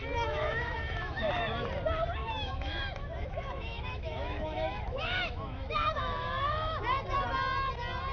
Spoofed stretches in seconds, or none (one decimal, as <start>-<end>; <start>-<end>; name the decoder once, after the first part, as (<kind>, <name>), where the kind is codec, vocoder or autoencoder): 0.0-1.3 (autoencoder, DAC-VAE); 2.2-6.8